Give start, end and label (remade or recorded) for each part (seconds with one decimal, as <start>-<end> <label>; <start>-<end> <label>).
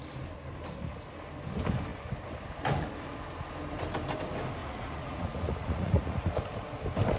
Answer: 0.0-4.6 recorded; 4.6-6.4 remade; 6.4-7.2 recorded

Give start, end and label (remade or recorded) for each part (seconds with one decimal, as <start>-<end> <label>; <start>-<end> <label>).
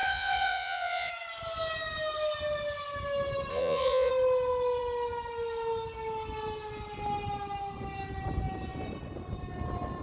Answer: 0.0-1.1 remade; 1.1-3.5 recorded; 3.5-4.1 remade; 4.1-10.0 recorded